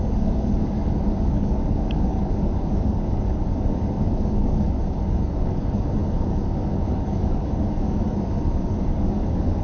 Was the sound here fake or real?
fake